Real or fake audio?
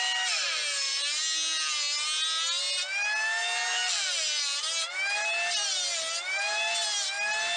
real